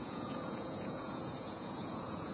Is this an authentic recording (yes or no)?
no